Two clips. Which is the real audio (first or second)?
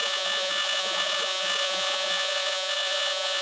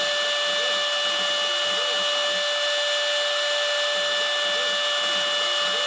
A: second